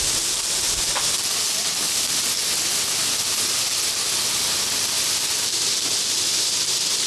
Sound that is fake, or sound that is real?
real